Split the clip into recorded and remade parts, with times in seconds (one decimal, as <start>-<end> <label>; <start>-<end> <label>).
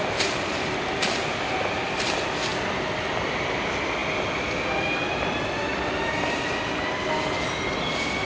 0.0-8.2 recorded